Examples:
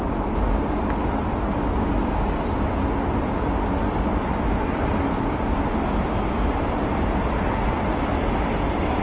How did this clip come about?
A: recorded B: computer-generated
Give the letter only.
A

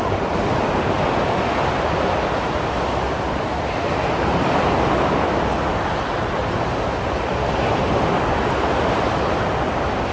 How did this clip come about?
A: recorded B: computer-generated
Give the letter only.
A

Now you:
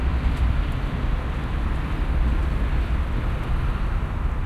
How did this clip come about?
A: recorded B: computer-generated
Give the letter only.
A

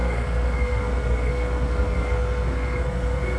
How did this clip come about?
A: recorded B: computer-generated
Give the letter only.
B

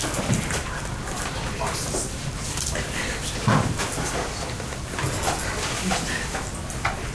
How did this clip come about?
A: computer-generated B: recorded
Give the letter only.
B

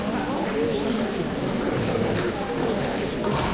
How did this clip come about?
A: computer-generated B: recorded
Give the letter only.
B